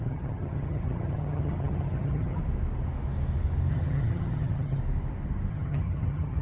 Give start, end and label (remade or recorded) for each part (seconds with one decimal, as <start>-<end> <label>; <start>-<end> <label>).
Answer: 0.0-2.4 remade; 2.4-3.7 recorded; 3.7-4.8 remade; 4.8-5.5 recorded; 5.5-6.4 remade

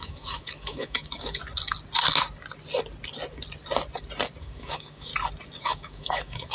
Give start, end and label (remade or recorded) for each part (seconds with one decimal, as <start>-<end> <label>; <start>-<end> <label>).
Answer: 0.0-1.4 remade; 1.4-4.4 recorded; 4.4-5.1 remade; 5.1-5.6 recorded; 5.6-6.5 remade

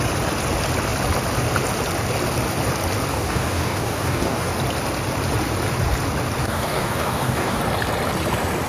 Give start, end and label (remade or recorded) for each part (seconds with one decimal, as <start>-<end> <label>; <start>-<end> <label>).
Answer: 0.0-3.1 recorded; 3.1-4.5 remade; 4.5-6.4 recorded; 6.4-7.6 remade; 7.6-8.7 recorded

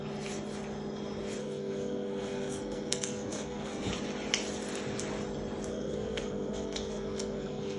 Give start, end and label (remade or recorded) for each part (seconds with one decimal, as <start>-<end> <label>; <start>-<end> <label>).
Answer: 0.0-1.4 recorded; 1.4-3.9 remade; 3.9-5.7 recorded; 5.7-7.8 remade

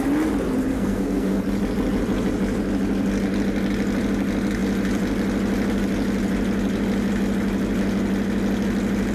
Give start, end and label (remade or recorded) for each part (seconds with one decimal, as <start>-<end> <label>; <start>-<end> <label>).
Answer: 0.0-0.7 recorded; 0.7-1.4 remade; 1.4-9.1 recorded

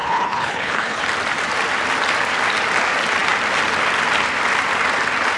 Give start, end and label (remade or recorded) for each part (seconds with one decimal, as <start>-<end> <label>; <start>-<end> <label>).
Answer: 0.0-1.0 remade; 1.0-5.4 recorded